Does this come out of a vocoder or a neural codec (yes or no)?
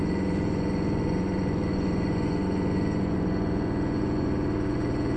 yes